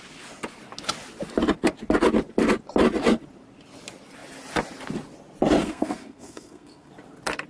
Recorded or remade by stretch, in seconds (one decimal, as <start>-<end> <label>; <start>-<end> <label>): 0.0-5.6 recorded; 5.6-6.9 remade; 6.9-7.5 recorded